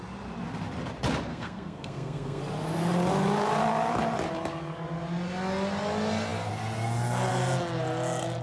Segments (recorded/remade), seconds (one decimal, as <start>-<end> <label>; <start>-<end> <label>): 0.0-1.3 recorded; 1.3-2.4 remade; 2.4-8.4 recorded